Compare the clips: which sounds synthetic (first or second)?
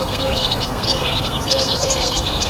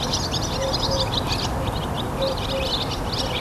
first